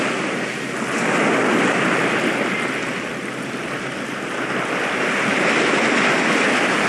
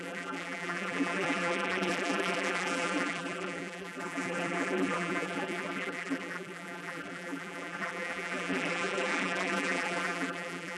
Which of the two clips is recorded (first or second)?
first